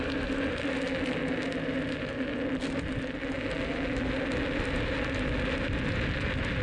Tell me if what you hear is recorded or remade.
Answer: recorded